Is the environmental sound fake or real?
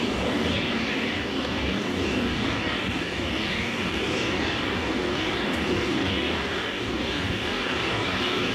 fake